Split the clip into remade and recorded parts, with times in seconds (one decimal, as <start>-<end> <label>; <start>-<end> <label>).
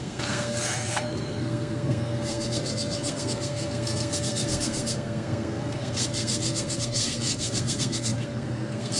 0.0-9.0 remade